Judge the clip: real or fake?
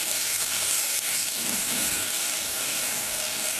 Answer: fake